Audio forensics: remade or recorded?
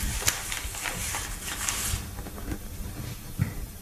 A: recorded